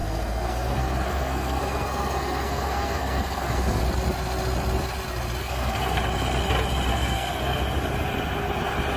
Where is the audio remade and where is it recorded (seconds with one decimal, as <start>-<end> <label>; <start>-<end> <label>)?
0.0-3.8 remade; 3.8-5.4 recorded; 5.4-6.0 remade; 6.0-6.9 recorded; 6.9-7.6 remade; 7.6-9.0 recorded